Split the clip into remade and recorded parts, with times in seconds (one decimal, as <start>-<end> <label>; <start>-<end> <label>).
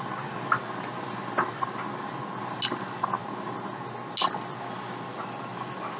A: 0.0-6.0 recorded